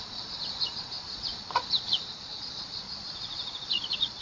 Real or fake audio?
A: fake